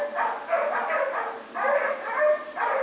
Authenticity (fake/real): real